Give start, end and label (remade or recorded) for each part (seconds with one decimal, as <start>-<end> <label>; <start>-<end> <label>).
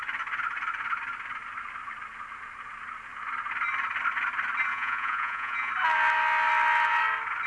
0.0-4.7 recorded; 4.7-5.7 remade; 5.7-7.5 recorded